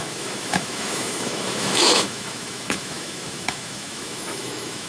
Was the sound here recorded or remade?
remade